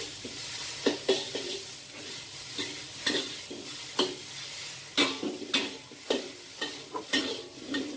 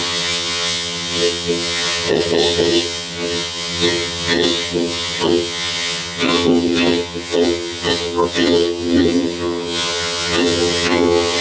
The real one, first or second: first